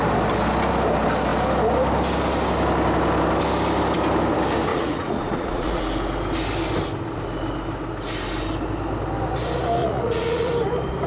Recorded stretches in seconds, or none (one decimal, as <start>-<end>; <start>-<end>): 0.0-4.7; 5.8-9.8; 10.5-11.1